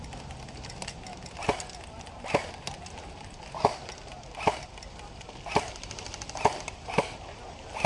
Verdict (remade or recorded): recorded